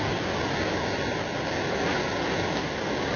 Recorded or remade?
recorded